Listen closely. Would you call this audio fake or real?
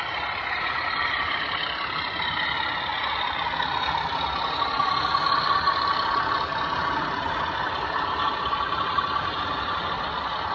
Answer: real